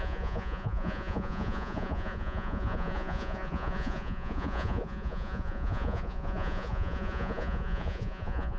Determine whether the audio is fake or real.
fake